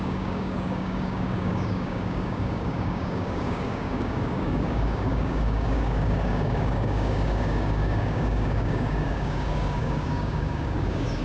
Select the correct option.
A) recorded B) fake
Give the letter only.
B